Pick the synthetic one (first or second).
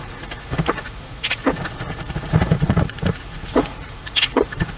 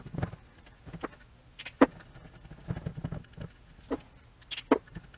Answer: first